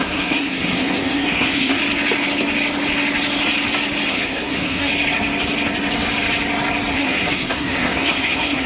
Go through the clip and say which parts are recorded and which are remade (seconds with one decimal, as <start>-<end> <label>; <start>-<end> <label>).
0.0-1.8 remade; 1.8-4.1 recorded; 4.1-4.9 remade; 4.9-6.9 recorded; 6.9-8.7 remade